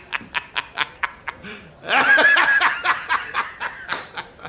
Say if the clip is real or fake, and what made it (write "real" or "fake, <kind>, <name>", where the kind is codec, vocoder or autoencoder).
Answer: fake, vocoder, BigVGAN v2